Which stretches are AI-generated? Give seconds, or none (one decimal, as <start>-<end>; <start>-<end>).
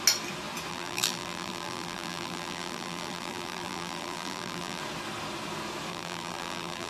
0.7-4.8; 5.9-6.9